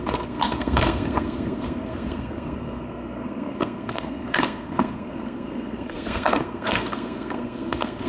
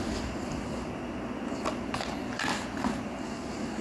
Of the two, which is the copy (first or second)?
first